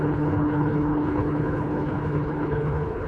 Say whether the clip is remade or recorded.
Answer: remade